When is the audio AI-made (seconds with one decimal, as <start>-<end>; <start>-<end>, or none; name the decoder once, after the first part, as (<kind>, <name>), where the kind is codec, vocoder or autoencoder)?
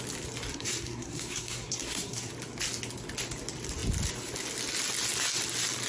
0.5-2.3 (codec, SNAC)